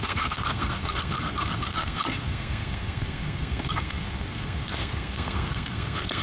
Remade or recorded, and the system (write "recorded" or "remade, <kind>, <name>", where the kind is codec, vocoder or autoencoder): remade, codec, SNAC